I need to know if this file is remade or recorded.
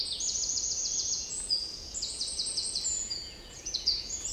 remade